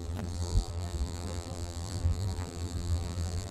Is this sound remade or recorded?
remade